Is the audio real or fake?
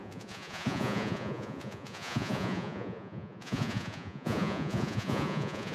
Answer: fake